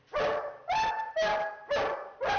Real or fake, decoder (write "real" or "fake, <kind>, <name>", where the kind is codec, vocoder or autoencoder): real